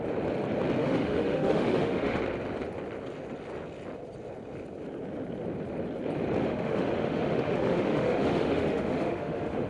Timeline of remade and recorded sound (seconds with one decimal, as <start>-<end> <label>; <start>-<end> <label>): 0.0-0.8 recorded; 0.8-2.2 remade; 2.2-6.4 recorded; 6.4-9.7 remade